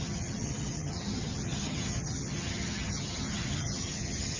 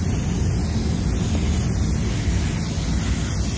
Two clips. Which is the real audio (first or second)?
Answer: second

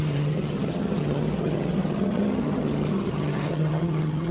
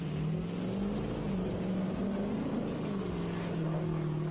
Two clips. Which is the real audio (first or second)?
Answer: second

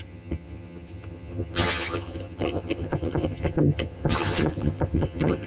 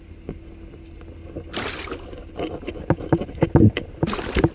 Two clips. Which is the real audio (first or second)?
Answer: second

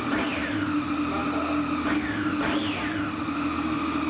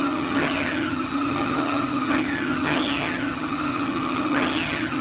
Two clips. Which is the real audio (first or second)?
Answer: first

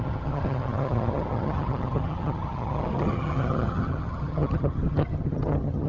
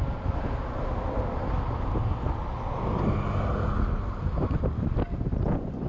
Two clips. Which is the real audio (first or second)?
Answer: second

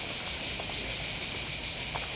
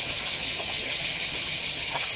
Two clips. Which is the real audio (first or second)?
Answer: first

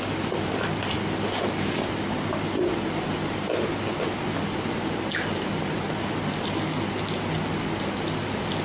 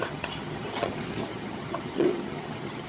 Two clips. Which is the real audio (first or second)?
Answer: first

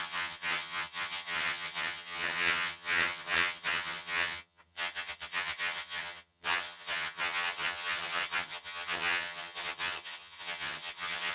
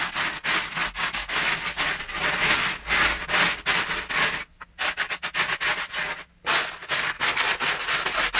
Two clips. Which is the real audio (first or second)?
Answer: second